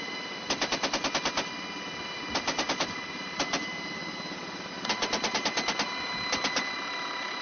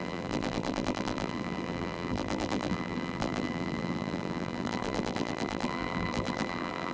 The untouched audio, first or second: first